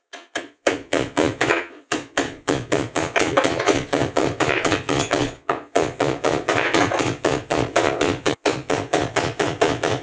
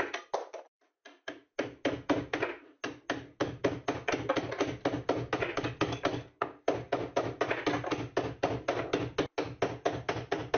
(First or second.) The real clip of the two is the second